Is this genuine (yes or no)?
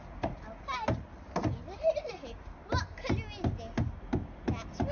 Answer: yes